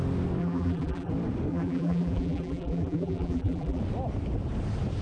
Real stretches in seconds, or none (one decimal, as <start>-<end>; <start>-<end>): 0.0-0.4; 1.1-1.5; 3.8-5.0